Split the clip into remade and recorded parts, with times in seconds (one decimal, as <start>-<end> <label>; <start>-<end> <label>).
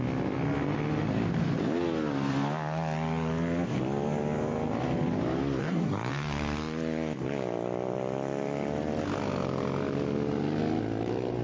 0.0-5.6 recorded; 5.6-6.1 remade; 6.1-11.4 recorded